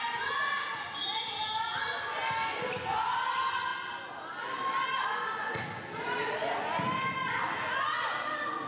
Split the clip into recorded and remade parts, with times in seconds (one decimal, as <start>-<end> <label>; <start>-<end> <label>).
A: 0.0-8.7 recorded